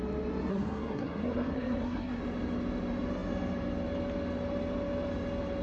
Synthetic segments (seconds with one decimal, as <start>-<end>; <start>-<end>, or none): 0.5-2.2